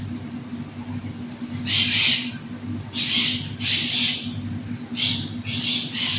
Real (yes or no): yes